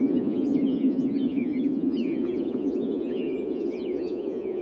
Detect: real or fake fake